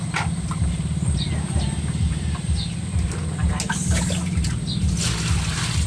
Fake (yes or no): no